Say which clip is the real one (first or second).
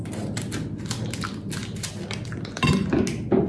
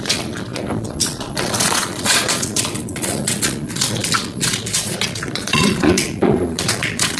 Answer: first